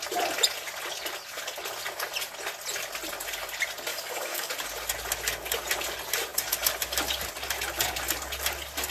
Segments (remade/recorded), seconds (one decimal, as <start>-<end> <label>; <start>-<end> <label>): 0.0-3.9 recorded; 3.9-4.5 remade; 4.5-8.9 recorded